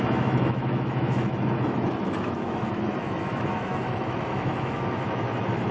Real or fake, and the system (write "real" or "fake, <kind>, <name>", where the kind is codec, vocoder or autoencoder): fake, autoencoder, DAC-VAE